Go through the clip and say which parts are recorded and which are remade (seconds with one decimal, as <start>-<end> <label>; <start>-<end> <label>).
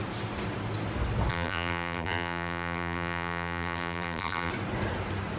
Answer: 0.0-1.3 recorded; 1.3-4.5 remade; 4.5-5.4 recorded